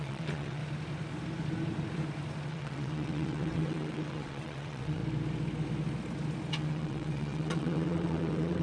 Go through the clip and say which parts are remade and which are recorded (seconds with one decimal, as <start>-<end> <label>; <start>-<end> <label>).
0.0-0.6 remade; 0.6-2.5 recorded; 2.5-5.0 remade; 5.0-6.5 recorded; 6.5-8.6 remade